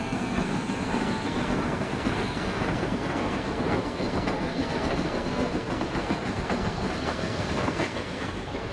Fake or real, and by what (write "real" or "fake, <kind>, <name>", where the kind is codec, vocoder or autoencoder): fake, codec, SNAC